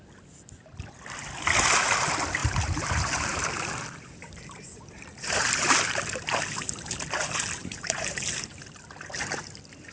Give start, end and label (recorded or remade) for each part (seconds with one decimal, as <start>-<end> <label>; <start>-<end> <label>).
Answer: 0.0-2.4 recorded; 2.4-6.2 remade; 6.2-7.6 recorded; 7.6-8.6 remade; 8.6-9.9 recorded